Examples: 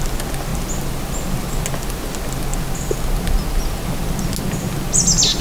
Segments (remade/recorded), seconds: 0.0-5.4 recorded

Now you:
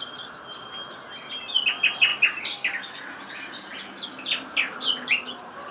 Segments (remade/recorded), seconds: 0.0-5.7 recorded

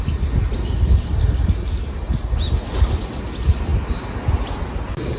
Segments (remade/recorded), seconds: 0.0-5.2 recorded

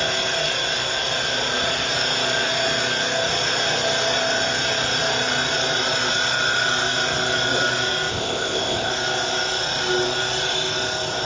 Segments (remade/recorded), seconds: 0.0-8.1 recorded; 8.1-8.9 remade; 8.9-11.3 recorded